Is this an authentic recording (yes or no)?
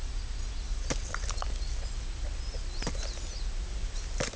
yes